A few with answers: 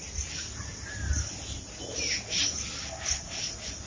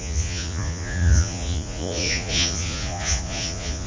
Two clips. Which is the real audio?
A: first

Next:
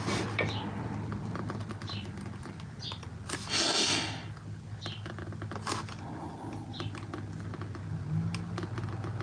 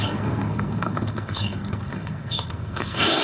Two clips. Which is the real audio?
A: first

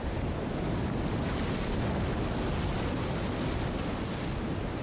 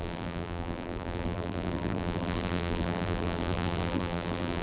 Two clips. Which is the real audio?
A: first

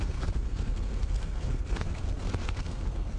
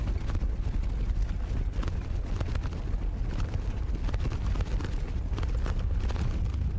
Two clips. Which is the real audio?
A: second